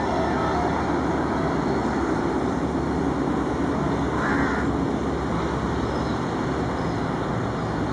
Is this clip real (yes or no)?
yes